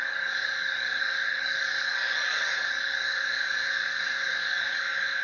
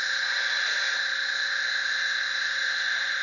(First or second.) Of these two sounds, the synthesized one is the first